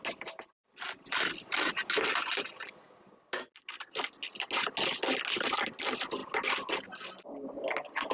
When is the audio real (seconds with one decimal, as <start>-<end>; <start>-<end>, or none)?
0.0-8.1